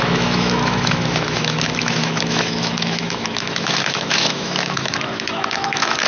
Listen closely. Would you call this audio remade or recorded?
remade